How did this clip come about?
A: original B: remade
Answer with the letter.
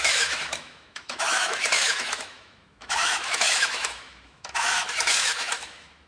B